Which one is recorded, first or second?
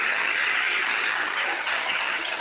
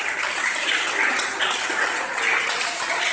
second